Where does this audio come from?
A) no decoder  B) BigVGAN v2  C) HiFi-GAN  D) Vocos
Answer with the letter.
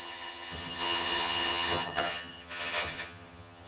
C